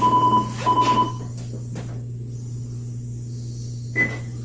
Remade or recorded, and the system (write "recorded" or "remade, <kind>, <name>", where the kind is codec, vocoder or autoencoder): recorded